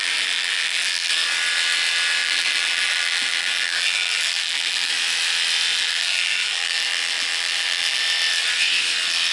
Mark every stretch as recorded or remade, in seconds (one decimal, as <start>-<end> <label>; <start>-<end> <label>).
0.0-1.1 remade; 1.1-2.2 recorded; 2.2-4.9 remade; 4.9-5.7 recorded; 5.7-8.0 remade; 8.0-9.3 recorded